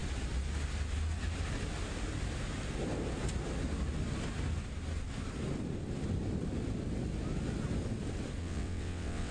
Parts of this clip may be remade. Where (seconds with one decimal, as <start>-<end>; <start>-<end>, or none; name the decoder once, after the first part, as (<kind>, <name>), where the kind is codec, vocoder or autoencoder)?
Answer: 8.4-9.3 (vocoder, WaveNeXt)